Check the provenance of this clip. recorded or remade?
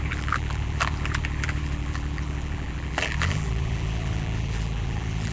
remade